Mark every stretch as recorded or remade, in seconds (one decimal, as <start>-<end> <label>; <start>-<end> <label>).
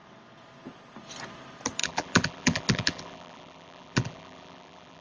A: 0.0-1.8 recorded; 1.8-5.0 remade